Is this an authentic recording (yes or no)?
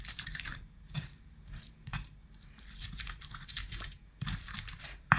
no